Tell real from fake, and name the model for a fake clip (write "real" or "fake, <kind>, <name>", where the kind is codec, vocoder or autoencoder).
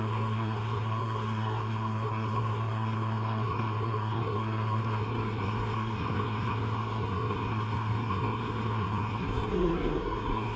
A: fake, codec, SNAC